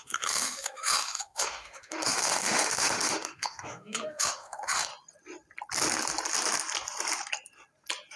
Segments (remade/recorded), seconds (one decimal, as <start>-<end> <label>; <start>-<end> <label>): 0.0-4.9 remade; 4.9-8.2 recorded